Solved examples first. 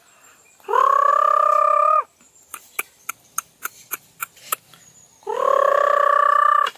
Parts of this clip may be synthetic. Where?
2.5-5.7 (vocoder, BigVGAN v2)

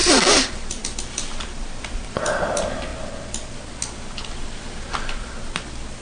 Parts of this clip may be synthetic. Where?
0.0-2.4 (vocoder, BigVGAN v2)

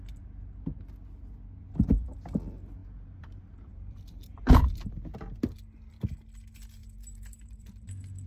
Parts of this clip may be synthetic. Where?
2.8-4.6 (vocoder, BigVGAN v2); 6.8-7.9